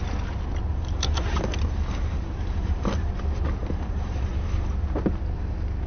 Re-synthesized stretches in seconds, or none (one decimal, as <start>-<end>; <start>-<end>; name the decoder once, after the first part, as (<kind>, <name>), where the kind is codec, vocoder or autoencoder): 0.7-3.1 (vocoder, BigVGAN v2); 3.6-4.7

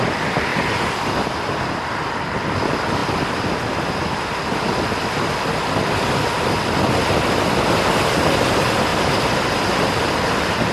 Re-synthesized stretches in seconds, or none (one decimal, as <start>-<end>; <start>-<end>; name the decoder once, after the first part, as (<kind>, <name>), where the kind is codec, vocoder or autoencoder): 0.5-1.2 (vocoder, BigVGAN v2); 8.9-9.6

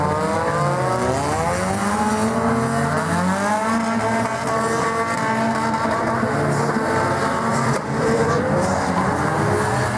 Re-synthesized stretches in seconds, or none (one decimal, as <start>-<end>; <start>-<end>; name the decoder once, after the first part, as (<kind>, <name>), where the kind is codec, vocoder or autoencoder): 7.5-8.6 (vocoder, BigVGAN v2)